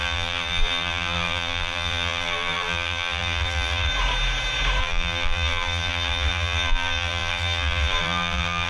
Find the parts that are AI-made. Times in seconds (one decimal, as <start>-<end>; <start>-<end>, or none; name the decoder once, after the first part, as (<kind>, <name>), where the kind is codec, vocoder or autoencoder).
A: 0.0-3.9 (vocoder, BigVGAN v2); 4.8-8.7